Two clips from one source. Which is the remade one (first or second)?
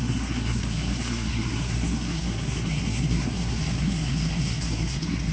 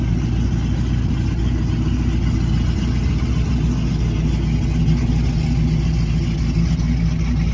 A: first